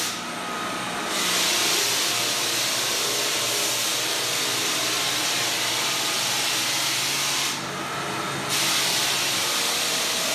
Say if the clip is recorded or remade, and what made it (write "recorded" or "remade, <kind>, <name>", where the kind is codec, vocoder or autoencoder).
recorded